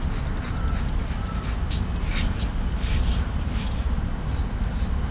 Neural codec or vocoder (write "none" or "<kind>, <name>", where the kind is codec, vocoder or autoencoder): none